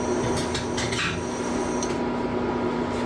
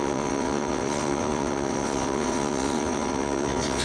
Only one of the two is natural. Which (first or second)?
first